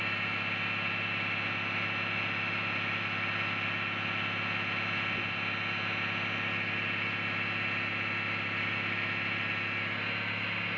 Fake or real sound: real